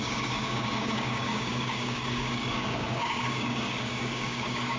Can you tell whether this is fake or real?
fake